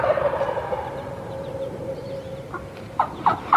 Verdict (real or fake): fake